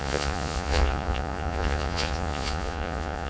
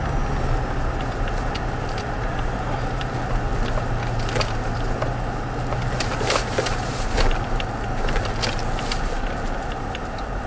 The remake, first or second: first